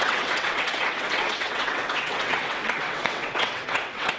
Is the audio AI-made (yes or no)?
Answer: yes